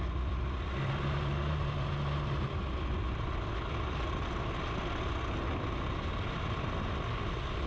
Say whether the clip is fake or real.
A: real